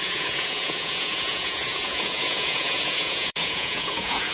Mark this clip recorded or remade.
remade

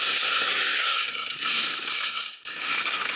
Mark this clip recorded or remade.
remade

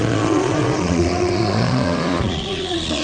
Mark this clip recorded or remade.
remade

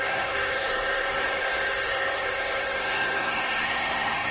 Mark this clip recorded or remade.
remade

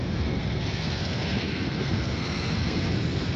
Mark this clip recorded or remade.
remade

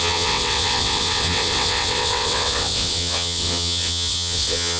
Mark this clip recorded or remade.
remade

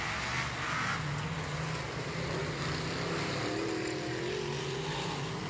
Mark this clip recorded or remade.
recorded